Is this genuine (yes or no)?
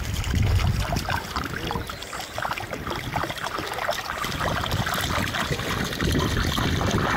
yes